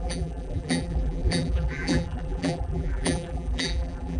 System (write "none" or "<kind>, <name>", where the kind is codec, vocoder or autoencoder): vocoder, BigVGAN v2